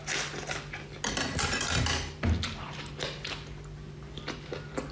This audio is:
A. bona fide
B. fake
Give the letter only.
A